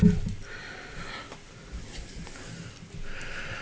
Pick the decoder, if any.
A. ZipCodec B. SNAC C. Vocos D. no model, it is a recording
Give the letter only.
D